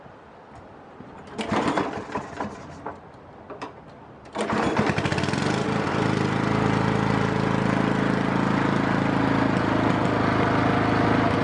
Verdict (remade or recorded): recorded